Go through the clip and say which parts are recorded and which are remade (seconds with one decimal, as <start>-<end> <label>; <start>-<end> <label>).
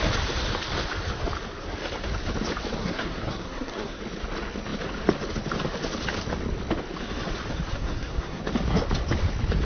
0.0-2.8 recorded; 2.8-4.0 remade; 4.0-7.7 recorded; 7.7-8.4 remade; 8.4-9.6 recorded